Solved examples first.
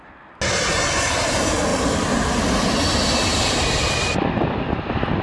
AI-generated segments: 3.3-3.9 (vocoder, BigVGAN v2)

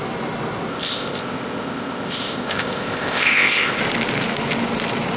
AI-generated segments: 0.7-3.8 (codec, ZipCodec)

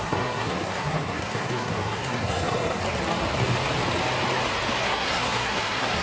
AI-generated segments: 0.0-2.8 (codec, SNAC); 4.8-6.0

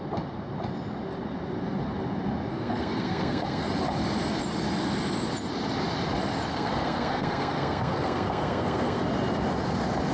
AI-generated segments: 2.5-3.7 (codec, SNAC); 6.5-9.0

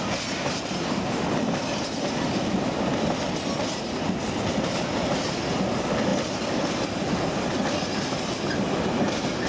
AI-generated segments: none